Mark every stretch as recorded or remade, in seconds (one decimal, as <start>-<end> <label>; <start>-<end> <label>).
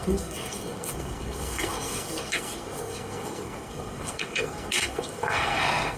0.0-6.0 remade